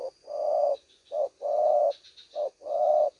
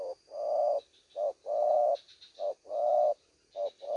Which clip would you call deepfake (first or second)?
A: first